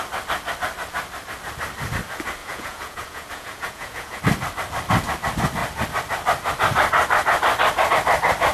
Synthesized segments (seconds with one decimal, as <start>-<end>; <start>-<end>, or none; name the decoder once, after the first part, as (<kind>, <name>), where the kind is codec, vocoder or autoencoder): 2.4-4.2 (vocoder, Vocos)